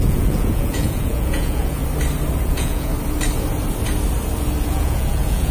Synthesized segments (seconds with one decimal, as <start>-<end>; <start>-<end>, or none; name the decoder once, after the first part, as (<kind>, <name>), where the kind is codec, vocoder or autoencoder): 0.0-1.8 (vocoder, Vocos); 2.4-2.9; 4.7-5.5